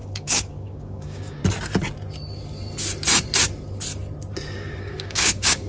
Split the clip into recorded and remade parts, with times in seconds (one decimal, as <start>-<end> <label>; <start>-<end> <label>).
0.0-1.4 remade; 1.4-4.8 recorded; 4.8-5.7 remade